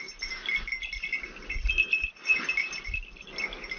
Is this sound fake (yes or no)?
no